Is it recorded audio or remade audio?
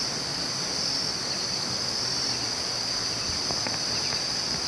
recorded